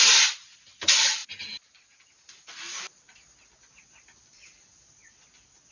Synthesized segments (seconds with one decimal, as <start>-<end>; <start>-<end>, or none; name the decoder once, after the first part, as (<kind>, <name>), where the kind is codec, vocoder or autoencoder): none